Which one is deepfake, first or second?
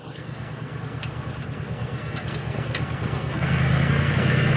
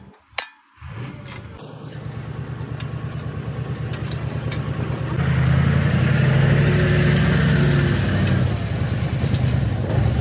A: first